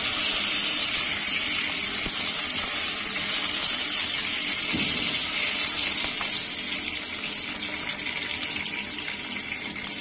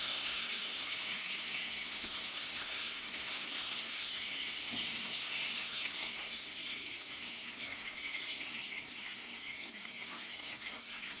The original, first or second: first